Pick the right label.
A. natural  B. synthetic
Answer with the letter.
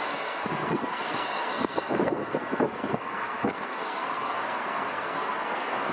B